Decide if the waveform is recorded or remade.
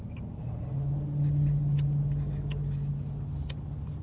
recorded